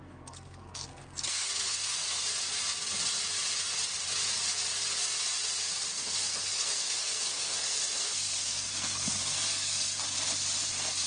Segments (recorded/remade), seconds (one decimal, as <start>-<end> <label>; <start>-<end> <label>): 0.0-2.2 remade; 2.2-5.9 recorded; 5.9-10.0 remade; 10.0-10.7 recorded; 10.7-11.1 remade